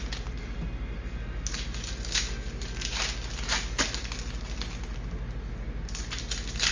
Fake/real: real